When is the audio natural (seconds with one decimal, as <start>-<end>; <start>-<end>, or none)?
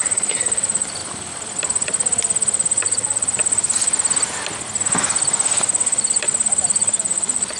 1.0-2.8; 3.4-7.0